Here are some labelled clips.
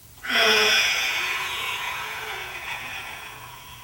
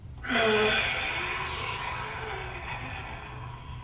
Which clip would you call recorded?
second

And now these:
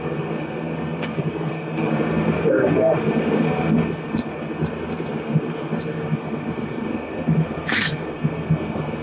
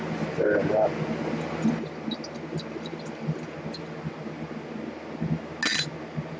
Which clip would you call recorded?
second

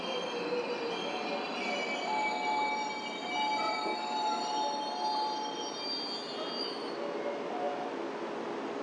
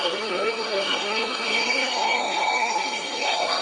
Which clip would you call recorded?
first